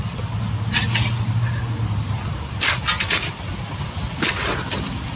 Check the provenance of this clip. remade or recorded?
recorded